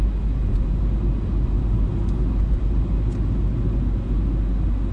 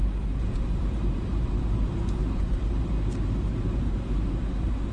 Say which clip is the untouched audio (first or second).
first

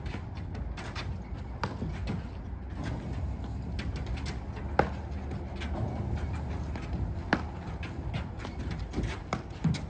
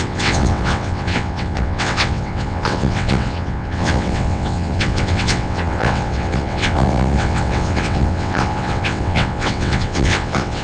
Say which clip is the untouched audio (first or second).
first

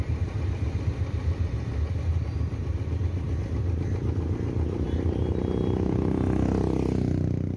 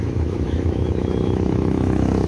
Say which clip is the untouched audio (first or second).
first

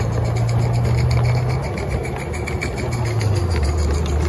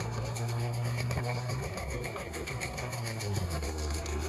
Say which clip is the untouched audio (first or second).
first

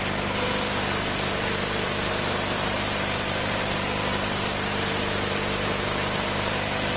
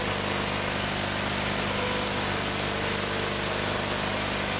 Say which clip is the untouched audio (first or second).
second